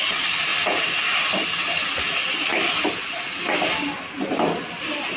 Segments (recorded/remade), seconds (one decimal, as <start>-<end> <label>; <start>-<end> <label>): 0.0-5.2 recorded